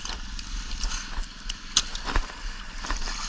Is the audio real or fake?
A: real